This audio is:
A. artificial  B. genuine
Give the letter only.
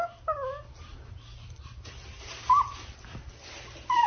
B